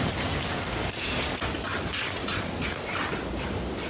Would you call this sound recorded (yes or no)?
yes